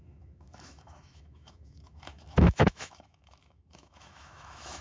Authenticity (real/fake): fake